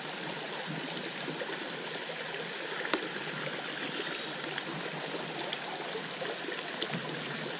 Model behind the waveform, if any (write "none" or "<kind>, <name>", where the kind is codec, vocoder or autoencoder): none